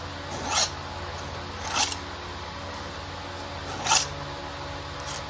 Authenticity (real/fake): real